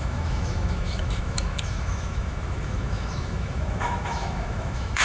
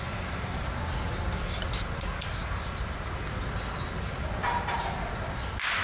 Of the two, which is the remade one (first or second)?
first